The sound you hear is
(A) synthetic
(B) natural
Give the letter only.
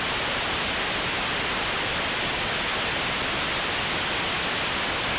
B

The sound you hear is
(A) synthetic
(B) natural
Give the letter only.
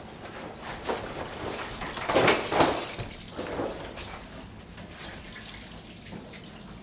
B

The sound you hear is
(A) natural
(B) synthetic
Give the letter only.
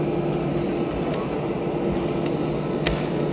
A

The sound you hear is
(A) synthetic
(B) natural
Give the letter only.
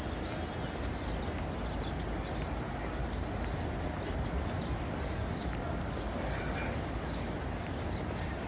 B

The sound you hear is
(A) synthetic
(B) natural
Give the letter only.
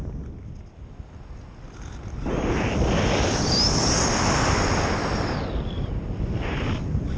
B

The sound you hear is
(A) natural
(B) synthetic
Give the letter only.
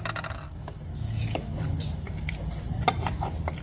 A